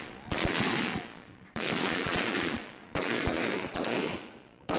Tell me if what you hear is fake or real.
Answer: fake